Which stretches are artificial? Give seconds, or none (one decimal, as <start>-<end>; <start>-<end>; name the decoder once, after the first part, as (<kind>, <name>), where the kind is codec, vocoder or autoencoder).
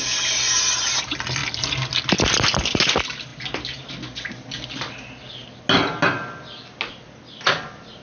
none